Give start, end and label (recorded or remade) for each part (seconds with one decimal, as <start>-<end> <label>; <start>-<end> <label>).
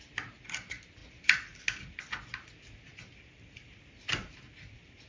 0.0-5.1 recorded